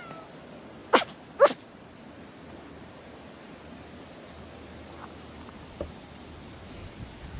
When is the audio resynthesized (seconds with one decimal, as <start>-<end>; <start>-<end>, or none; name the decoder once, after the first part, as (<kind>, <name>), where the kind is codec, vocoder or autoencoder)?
none